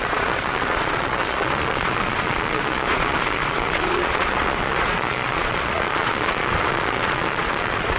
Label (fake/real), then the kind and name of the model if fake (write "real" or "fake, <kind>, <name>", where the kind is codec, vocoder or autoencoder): fake, vocoder, Vocos